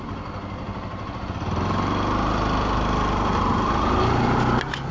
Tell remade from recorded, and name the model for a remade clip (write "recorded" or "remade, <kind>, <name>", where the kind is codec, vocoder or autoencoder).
recorded